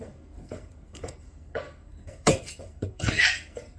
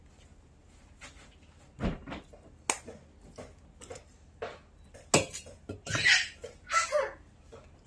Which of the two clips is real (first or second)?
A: second